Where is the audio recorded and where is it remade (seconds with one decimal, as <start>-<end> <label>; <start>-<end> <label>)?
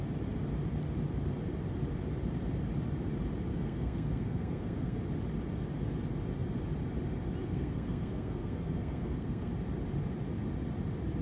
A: 0.0-3.5 recorded; 3.5-5.0 remade; 5.0-7.4 recorded; 7.4-9.5 remade; 9.5-11.2 recorded